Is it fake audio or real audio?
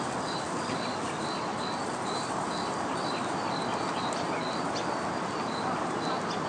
real